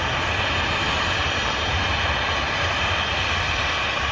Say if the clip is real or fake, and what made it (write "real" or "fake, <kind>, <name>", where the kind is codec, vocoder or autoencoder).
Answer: real